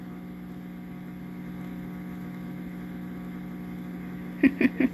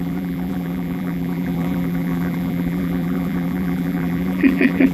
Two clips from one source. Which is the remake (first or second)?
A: second